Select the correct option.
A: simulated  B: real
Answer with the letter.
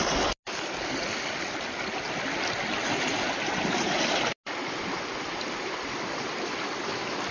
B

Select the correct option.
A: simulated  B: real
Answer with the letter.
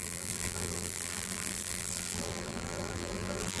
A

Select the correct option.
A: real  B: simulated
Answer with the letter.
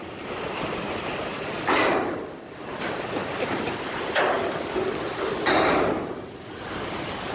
A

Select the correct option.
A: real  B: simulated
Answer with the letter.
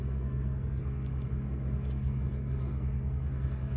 B